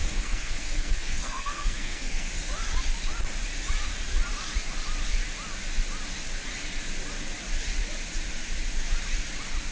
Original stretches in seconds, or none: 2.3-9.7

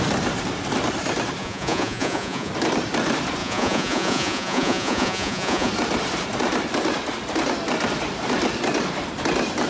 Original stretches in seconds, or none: 0.0-1.4; 2.5-3.4; 5.7-9.7

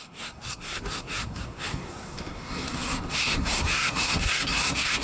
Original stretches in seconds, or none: none